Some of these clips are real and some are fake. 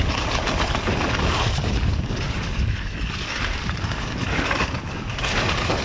fake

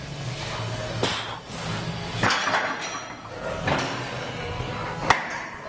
real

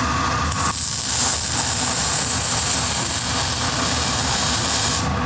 fake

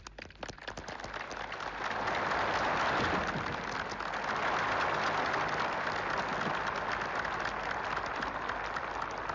real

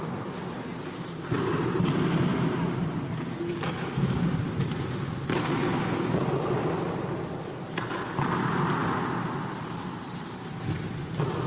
real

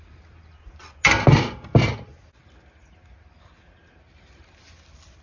real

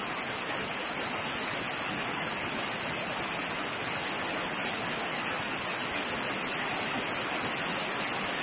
real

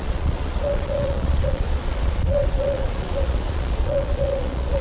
fake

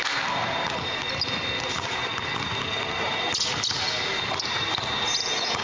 real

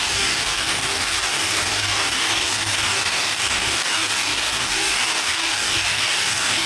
fake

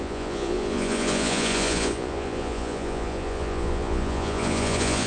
fake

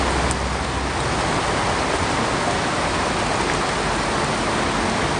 real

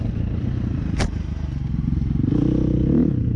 real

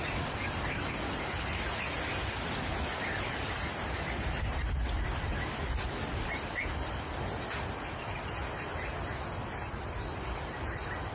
real